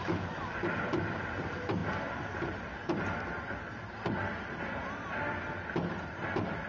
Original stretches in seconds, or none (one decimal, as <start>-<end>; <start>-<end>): none